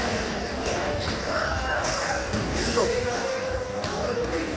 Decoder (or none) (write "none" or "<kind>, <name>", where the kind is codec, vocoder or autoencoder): codec, DAC